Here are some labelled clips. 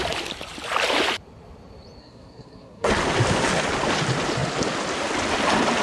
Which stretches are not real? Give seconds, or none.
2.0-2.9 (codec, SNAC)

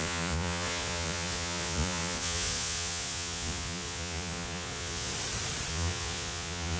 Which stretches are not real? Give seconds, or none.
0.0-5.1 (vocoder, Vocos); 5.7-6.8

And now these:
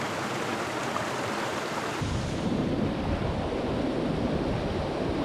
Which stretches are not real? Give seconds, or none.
0.5-3.6 (vocoder, BigVGAN v2)

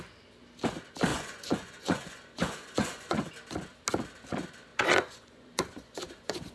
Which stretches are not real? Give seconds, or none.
1.1-3.3 (vocoder, Vocos); 4.7-6.5

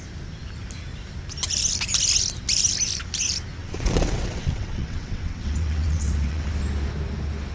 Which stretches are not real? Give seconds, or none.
3.6-6.5 (vocoder, WaveNeXt)

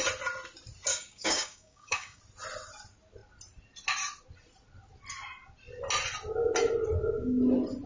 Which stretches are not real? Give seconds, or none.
0.9-2.2 (codec, DAC)

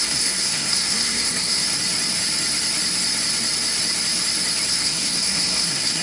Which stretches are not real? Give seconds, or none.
0.0-1.6 (codec, SNAC); 4.7-6.0

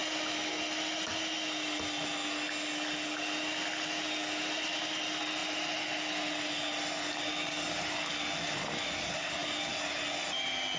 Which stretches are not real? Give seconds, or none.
none